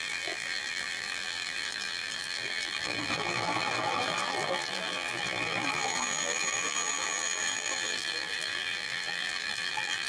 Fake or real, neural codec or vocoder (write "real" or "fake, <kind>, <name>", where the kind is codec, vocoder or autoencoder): fake, vocoder, BigVGAN v2